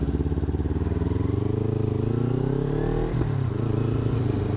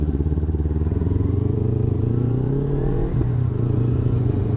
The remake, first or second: second